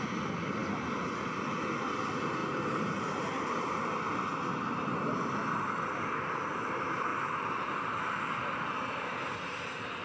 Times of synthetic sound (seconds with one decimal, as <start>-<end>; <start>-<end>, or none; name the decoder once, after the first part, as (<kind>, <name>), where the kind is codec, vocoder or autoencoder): 2.4-3.7 (vocoder, BigVGAN v2); 7.1-8.2